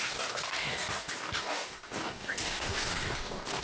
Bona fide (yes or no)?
no